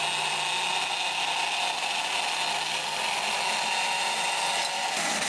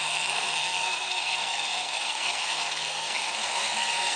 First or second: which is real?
first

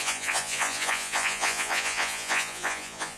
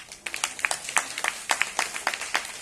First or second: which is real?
second